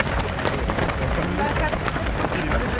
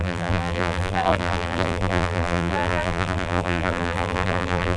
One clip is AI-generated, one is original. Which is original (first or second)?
first